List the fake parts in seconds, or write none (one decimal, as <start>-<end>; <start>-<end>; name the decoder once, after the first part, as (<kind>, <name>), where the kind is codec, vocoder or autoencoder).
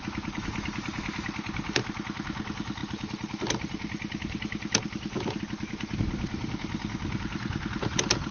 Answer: none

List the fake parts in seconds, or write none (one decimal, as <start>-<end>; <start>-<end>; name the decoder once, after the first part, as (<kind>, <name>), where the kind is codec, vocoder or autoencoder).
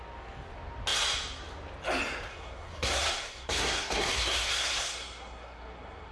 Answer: 2.3-6.1 (codec, SNAC)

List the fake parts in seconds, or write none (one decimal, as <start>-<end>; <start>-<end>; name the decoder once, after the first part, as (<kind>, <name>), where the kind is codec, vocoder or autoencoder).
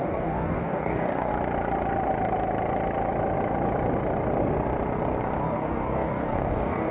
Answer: 0.0-1.3 (codec, DAC); 5.4-6.9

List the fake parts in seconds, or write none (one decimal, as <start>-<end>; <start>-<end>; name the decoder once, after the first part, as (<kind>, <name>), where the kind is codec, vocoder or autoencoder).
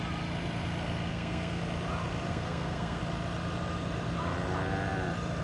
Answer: 1.1-1.6 (codec, SNAC); 2.3-3.0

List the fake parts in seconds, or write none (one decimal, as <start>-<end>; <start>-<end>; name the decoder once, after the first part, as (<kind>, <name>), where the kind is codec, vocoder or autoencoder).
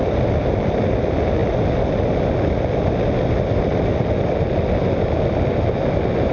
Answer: none